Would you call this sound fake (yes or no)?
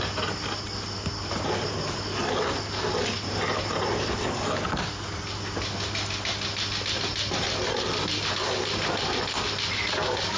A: no